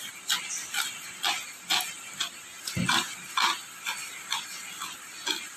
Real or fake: real